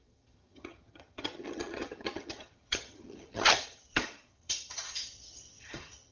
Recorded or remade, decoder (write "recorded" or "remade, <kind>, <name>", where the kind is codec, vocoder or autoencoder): remade, vocoder, HiFi-GAN